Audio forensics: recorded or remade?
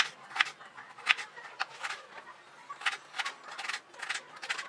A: recorded